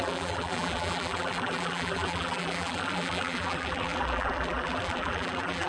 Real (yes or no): no